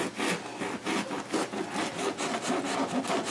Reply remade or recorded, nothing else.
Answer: recorded